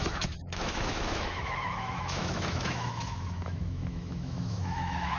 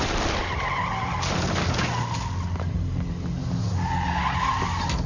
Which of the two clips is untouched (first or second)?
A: second